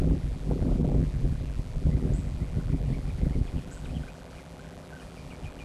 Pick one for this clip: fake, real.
fake